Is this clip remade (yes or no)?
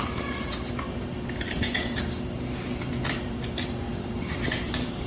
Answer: no